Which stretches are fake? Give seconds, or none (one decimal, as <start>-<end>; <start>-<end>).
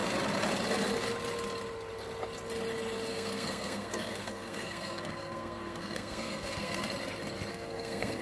3.1-6.8; 7.5-8.2